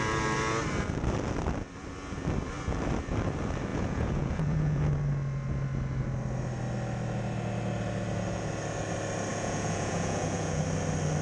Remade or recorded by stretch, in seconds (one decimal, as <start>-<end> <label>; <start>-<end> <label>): 0.0-3.7 recorded; 3.7-4.9 remade; 4.9-9.3 recorded; 9.3-10.6 remade; 10.6-11.2 recorded